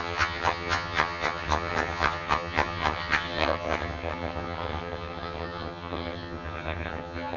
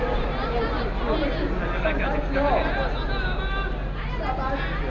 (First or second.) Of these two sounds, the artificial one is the first